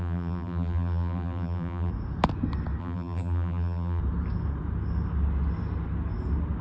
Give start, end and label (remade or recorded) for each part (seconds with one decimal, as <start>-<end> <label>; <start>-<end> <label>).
0.0-1.9 remade; 1.9-2.8 recorded; 2.8-4.0 remade; 4.0-6.6 recorded